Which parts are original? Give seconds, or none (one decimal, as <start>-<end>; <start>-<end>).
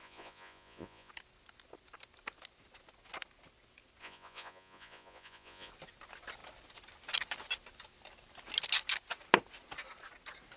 1.1-4.0; 5.7-10.6